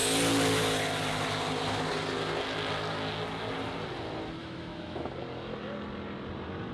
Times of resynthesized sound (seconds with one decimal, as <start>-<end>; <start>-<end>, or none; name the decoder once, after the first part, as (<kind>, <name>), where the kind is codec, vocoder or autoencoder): 4.4-5.1 (autoencoder, DAC-VAE)